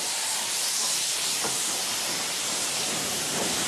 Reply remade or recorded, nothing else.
remade